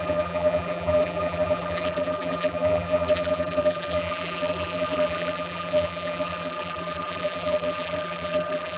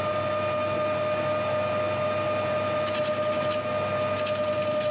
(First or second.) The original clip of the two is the second